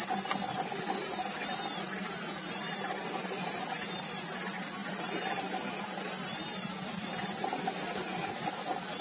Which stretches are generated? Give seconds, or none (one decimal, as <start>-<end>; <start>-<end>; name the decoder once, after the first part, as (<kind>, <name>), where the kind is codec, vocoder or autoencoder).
none